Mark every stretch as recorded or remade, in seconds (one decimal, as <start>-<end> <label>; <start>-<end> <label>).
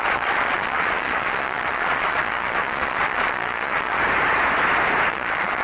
0.0-4.0 remade; 4.0-5.1 recorded; 5.1-5.6 remade